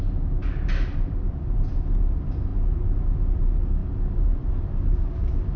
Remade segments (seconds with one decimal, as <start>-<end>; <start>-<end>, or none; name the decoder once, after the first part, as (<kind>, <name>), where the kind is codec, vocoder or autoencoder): none